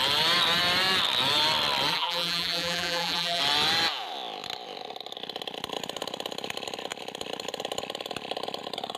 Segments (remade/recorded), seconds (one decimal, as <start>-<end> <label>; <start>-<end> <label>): 0.0-1.9 recorded; 1.9-3.4 remade; 3.4-9.0 recorded